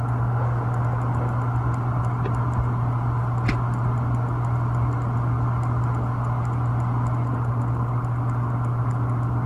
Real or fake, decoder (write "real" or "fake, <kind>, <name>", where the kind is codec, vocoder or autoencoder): real